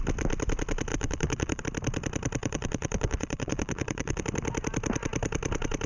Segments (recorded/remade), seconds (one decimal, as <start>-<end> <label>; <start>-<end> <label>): 0.0-0.9 recorded; 0.9-1.6 remade; 1.6-2.4 recorded; 2.4-4.2 remade; 4.2-5.9 recorded